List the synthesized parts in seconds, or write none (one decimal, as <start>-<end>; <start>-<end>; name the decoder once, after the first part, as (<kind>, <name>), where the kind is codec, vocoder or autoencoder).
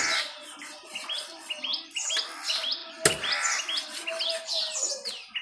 none